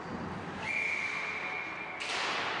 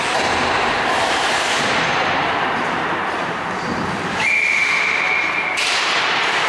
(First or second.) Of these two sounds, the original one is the first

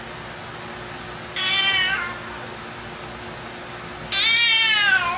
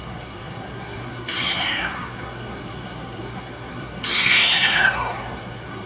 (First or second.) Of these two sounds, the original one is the first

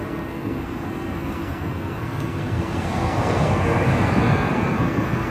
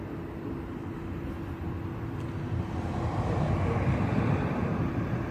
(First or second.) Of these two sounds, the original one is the second